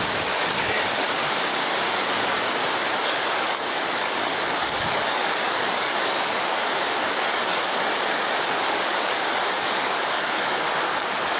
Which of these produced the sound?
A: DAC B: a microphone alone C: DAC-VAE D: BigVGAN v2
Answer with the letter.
A